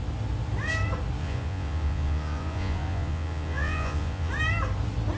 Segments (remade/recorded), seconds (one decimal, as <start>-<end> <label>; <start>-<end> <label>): 0.0-1.2 recorded; 1.2-4.3 remade; 4.3-5.2 recorded